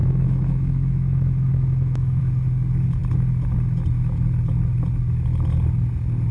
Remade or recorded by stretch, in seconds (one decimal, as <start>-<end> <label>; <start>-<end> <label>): 0.0-2.2 remade; 2.2-6.3 recorded

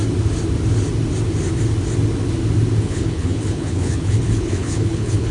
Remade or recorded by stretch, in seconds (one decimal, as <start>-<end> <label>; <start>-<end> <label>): 0.0-2.8 recorded; 2.8-5.3 remade

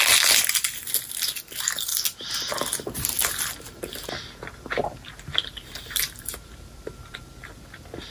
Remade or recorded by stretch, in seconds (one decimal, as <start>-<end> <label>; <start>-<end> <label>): 0.0-4.8 recorded; 4.8-7.3 remade; 7.3-8.1 recorded